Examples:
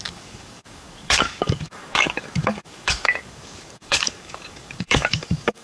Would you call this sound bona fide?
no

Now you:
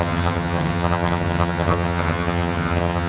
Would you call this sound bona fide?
no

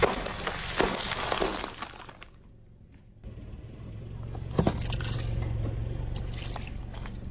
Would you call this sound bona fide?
yes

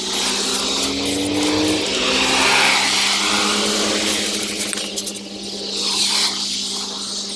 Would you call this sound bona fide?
yes